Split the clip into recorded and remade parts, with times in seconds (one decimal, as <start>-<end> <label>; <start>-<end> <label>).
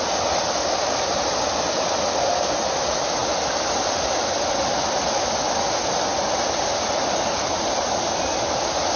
0.0-9.0 recorded